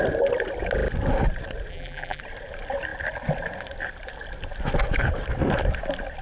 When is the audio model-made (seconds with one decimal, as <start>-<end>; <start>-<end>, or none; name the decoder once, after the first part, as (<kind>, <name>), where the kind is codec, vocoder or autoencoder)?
1.7-2.2 (vocoder, BigVGAN v2)

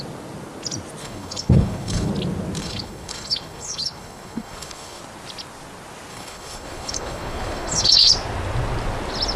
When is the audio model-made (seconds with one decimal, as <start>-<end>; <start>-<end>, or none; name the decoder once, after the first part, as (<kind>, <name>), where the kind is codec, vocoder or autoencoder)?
1.0-2.1 (codec, HILCodec); 2.6-5.0; 6.1-8.1

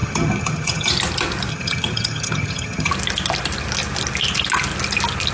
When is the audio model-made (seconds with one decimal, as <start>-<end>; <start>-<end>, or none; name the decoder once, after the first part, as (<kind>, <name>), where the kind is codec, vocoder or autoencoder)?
0.0-0.9 (vocoder, HiFi-GAN); 1.5-2.9